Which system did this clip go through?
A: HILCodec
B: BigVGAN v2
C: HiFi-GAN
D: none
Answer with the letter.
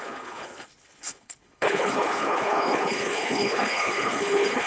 A